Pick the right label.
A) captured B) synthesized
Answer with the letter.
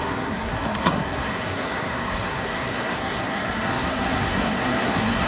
B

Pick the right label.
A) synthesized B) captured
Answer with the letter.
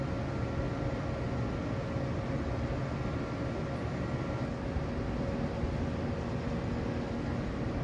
B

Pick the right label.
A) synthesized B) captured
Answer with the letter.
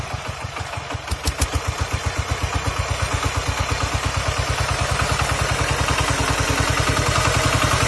B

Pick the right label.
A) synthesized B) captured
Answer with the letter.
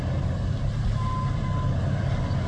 B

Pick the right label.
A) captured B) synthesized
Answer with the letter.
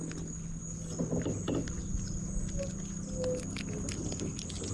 A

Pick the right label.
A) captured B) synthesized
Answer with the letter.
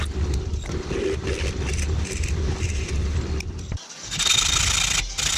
A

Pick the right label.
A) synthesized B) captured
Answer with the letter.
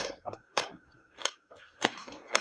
A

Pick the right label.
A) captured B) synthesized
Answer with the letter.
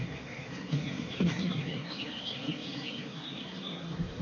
B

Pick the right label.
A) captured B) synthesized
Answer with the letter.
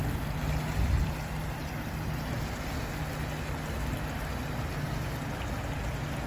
A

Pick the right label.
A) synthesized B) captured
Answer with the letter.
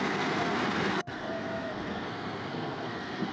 A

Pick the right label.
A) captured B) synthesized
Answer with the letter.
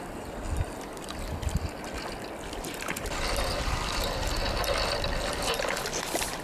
A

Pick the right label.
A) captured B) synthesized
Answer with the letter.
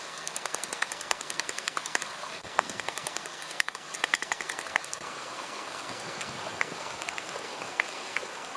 B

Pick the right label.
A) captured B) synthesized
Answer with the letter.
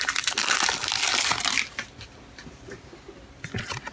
A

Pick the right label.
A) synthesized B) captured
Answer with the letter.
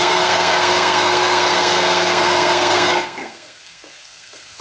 A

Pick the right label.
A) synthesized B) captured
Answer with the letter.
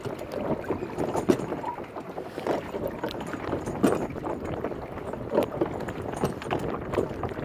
B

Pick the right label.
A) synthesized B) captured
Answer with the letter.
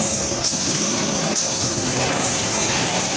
A